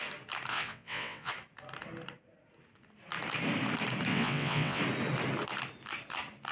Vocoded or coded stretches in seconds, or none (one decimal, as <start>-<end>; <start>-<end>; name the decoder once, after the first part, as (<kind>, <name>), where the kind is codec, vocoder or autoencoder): 0.5-1.3 (vocoder, WaveNeXt); 4.1-4.8